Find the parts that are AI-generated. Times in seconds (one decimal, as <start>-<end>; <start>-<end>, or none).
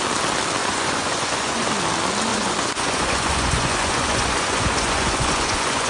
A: 0.6-1.7; 2.3-5.9